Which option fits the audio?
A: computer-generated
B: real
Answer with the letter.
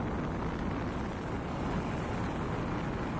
B